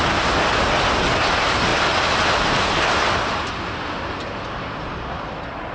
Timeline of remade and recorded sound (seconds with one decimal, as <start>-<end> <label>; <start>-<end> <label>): 0.0-5.7 recorded